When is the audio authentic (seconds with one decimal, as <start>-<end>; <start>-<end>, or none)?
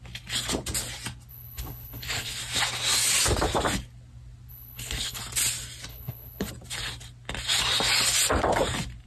0.0-1.3; 2.4-4.5; 5.2-5.9; 6.5-9.1